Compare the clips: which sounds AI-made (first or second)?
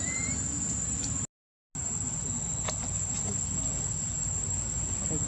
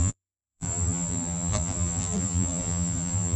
second